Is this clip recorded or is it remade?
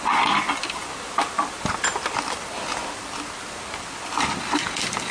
recorded